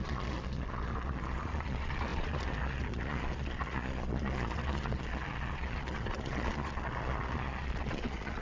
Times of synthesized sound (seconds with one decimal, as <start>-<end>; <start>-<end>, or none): 0.0-8.4